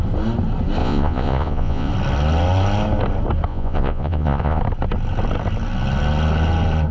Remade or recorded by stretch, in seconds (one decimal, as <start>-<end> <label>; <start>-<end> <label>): 0.0-0.8 recorded; 0.8-1.9 remade; 1.9-3.5 recorded; 3.5-4.6 remade; 4.6-6.9 recorded